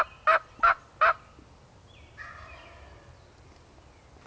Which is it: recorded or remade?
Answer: recorded